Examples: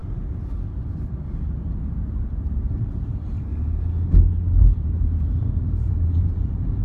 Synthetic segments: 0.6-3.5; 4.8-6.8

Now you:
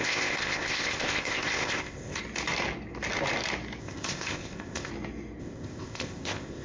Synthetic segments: 0.0-2.2; 3.8-4.9; 5.4-6.6

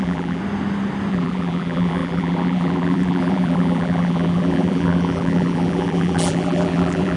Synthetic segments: 0.0-0.4; 1.1-7.2

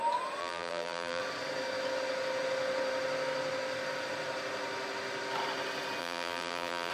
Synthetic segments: 0.4-1.2; 6.0-6.9

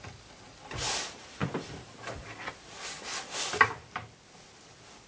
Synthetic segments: none

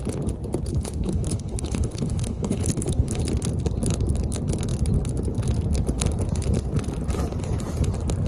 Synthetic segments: 0.7-3.2

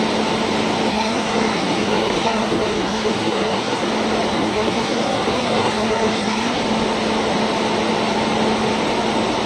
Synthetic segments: 0.9-3.9; 4.3-6.6